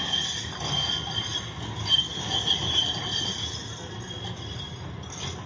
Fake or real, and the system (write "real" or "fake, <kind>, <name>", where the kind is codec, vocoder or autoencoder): real